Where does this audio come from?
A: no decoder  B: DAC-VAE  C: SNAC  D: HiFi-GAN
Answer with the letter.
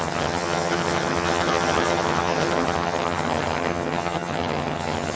D